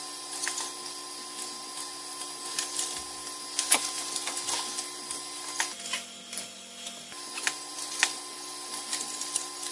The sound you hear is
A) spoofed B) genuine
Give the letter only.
B